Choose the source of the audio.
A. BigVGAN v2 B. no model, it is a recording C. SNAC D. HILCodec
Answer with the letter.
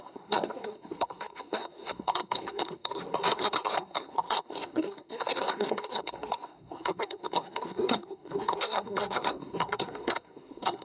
C